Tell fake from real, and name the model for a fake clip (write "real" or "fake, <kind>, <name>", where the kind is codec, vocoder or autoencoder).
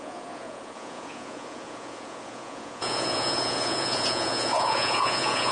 fake, vocoder, Vocos